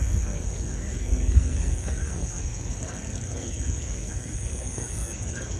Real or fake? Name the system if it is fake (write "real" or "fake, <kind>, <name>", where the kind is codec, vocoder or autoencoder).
fake, codec, SNAC